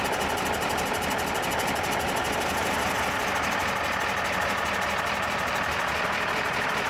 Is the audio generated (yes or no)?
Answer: yes